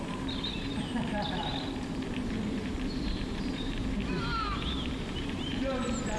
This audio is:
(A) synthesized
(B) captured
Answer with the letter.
A